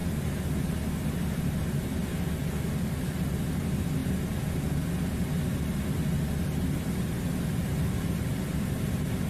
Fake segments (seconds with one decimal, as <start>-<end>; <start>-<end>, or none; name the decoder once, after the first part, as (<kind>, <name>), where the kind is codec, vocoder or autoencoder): none